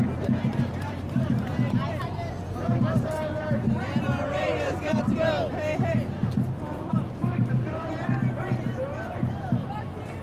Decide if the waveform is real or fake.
fake